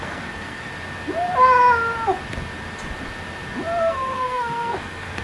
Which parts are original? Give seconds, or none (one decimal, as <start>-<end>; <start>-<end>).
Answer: 0.7-3.8